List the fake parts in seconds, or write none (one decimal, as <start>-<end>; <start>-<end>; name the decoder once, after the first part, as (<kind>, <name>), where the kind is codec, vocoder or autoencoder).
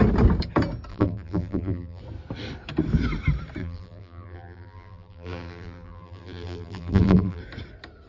0.9-2.0 (vocoder, BigVGAN v2); 3.6-7.4